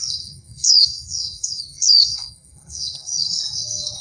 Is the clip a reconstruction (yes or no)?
yes